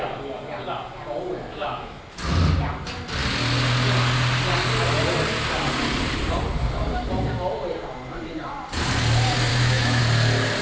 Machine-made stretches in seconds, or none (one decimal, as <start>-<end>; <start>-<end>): 1.5-2.0; 9.5-10.0